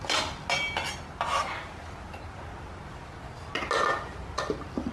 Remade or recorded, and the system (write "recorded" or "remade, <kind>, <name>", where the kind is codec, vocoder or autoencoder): recorded